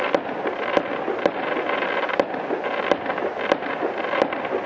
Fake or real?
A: real